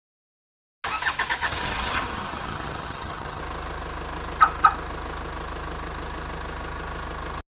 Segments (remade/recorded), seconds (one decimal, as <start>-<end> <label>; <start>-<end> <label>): 0.0-1.4 recorded; 1.4-3.4 remade; 3.4-7.6 recorded